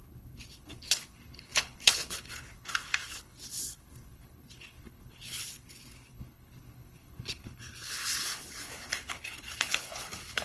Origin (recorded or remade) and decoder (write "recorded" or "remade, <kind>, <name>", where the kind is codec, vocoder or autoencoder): remade, codec, HILCodec